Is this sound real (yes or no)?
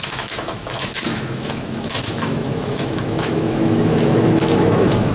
no